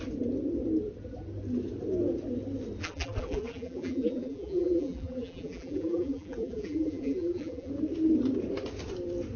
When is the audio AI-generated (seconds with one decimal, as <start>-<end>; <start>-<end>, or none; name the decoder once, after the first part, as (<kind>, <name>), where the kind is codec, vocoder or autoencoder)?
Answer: 2.8-7.7 (vocoder, BigVGAN v2)